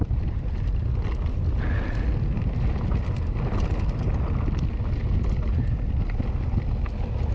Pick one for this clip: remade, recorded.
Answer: recorded